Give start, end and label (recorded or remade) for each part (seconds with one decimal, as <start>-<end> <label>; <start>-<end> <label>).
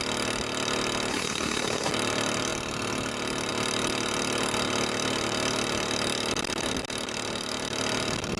0.0-1.1 recorded; 1.1-1.9 remade; 1.9-8.4 recorded